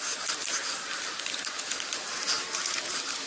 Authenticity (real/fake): real